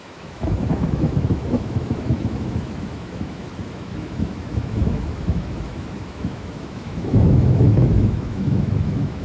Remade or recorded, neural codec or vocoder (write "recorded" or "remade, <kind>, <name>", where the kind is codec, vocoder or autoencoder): remade, autoencoder, DAC-VAE